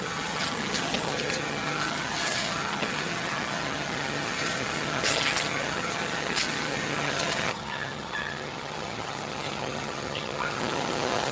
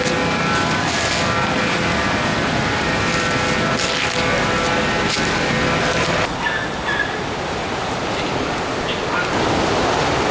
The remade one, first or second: first